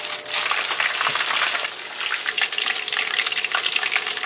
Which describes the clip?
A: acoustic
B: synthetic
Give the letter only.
A